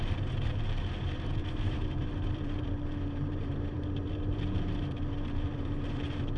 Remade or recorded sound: remade